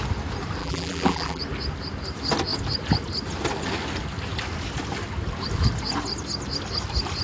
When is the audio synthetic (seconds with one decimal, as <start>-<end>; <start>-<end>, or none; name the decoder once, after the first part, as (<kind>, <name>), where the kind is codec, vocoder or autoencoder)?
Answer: 0.6-1.4 (vocoder, BigVGAN v2)